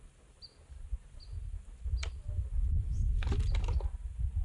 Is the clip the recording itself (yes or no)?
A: yes